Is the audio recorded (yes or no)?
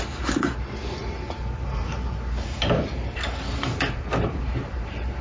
no